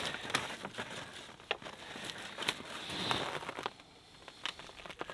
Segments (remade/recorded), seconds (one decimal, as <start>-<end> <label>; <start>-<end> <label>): 0.0-5.1 recorded